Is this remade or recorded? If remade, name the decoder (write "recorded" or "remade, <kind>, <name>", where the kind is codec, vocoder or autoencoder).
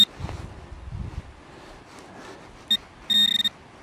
recorded